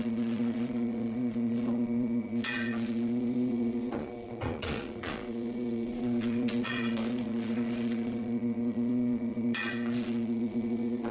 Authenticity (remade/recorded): remade